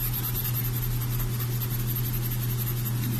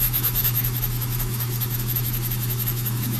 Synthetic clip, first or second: second